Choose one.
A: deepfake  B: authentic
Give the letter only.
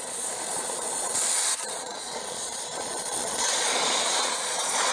A